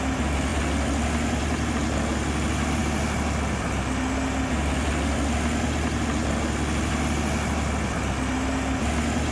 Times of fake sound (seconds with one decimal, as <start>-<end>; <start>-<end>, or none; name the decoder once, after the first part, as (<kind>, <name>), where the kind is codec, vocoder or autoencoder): none